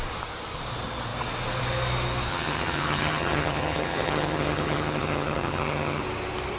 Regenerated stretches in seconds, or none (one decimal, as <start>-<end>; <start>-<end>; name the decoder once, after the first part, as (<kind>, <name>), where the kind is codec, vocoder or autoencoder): 2.3-6.0 (vocoder, HiFi-GAN)